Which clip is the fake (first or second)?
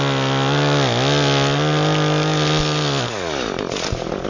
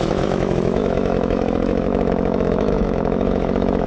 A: second